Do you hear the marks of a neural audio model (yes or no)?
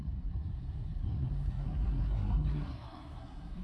yes